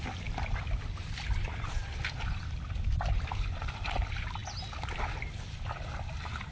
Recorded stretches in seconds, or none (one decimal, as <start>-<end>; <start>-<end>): 0.0-6.5